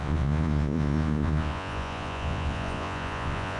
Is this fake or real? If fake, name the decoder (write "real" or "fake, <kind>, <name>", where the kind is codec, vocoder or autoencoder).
fake, vocoder, Vocos